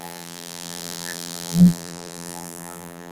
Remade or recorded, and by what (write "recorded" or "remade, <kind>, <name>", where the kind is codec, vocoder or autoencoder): remade, vocoder, BigVGAN v2